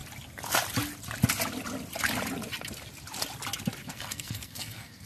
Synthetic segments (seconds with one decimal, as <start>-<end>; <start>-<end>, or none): 3.8-5.1